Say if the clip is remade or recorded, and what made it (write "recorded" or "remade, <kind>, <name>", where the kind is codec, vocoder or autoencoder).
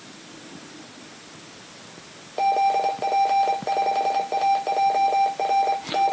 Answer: recorded